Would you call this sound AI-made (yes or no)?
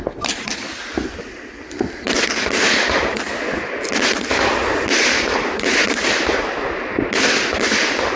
no